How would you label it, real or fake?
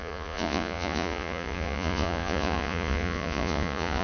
fake